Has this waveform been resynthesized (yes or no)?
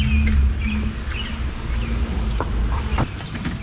no